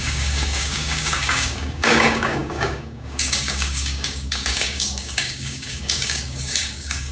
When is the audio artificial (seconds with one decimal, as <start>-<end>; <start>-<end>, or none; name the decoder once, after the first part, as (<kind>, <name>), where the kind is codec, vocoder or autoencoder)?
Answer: 0.0-7.1 (codec, DAC)